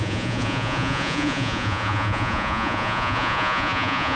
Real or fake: fake